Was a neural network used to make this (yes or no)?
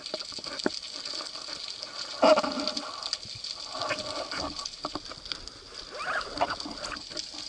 no